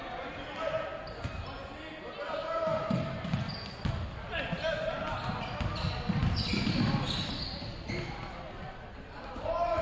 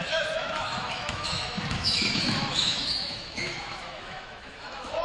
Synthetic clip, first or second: second